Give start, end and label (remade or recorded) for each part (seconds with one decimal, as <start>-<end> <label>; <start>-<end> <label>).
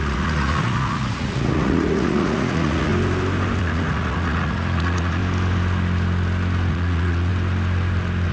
0.0-2.9 remade; 2.9-3.6 recorded; 3.6-5.2 remade; 5.2-6.7 recorded; 6.7-7.3 remade; 7.3-8.3 recorded